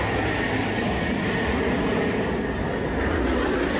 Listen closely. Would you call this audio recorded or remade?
recorded